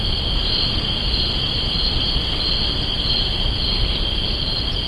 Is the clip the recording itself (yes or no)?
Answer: yes